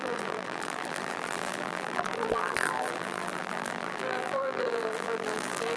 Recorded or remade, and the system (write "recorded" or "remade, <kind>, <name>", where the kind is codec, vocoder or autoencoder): remade, vocoder, BigVGAN v2